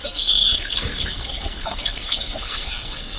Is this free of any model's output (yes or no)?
no